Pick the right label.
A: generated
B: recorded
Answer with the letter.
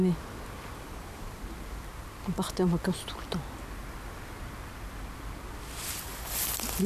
B